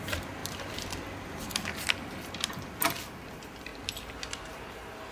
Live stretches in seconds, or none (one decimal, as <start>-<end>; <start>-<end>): 3.7-4.5